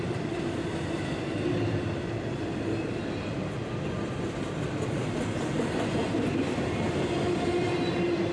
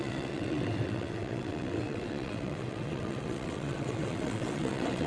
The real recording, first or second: first